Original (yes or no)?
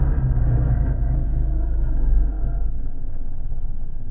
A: no